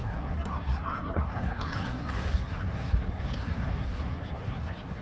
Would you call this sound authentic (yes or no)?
no